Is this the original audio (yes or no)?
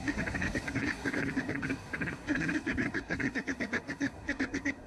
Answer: no